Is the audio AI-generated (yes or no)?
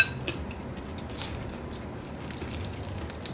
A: no